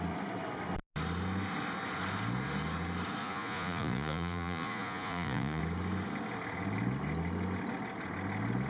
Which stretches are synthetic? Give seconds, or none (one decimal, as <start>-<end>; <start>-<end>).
3.2-5.6